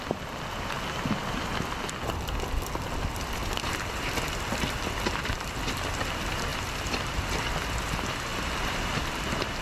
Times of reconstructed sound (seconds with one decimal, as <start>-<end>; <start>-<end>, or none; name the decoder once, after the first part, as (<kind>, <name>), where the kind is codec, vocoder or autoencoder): 6.5-7.2 (vocoder, BigVGAN v2); 8.3-9.2